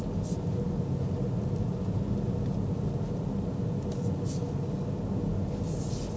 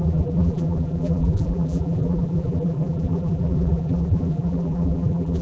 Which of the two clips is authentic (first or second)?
first